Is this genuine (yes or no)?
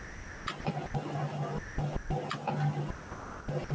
yes